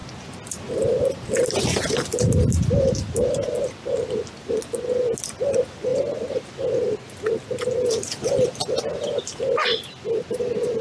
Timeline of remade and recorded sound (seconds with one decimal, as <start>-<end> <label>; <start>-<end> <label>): 0.0-10.8 recorded